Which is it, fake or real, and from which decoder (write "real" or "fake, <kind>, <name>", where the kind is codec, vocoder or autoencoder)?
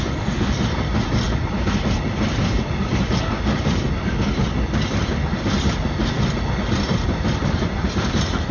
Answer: real